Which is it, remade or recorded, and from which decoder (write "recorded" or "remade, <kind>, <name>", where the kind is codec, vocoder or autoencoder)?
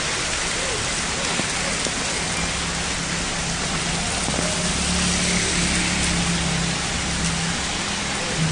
recorded